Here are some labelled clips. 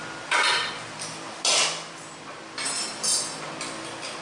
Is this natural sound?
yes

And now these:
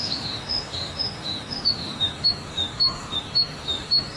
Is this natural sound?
no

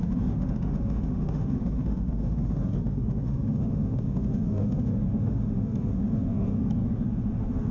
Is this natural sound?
no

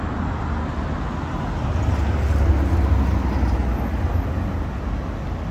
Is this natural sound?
yes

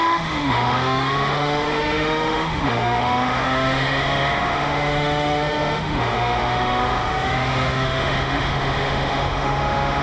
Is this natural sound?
no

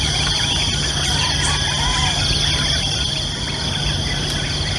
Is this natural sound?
yes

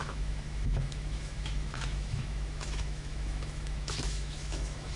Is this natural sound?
no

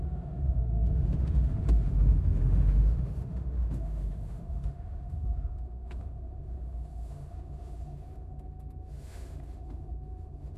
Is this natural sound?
no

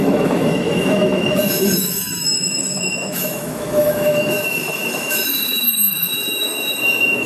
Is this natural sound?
no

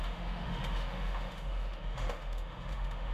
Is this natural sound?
no